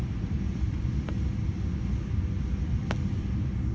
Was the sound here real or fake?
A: real